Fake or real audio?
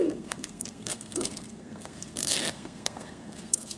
fake